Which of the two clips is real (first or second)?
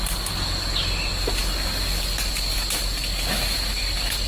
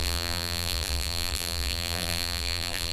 first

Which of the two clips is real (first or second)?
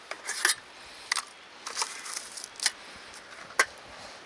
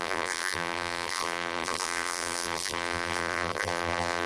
first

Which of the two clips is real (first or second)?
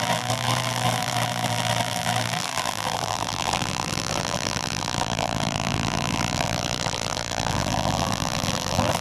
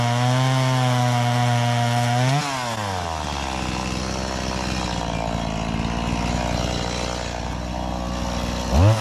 second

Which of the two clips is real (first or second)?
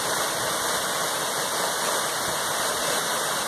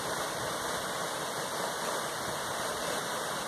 first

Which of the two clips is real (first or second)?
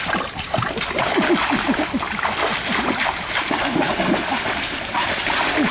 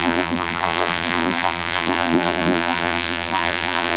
first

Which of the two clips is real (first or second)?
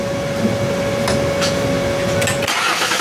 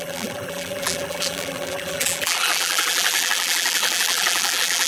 first